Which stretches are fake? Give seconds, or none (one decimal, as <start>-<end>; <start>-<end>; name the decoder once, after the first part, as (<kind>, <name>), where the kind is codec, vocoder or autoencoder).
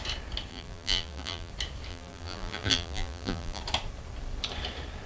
0.5-1.5 (vocoder, BigVGAN v2); 1.9-3.6